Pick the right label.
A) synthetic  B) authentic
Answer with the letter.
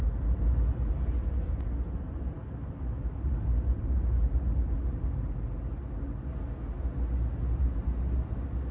B